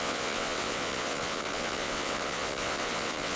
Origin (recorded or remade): remade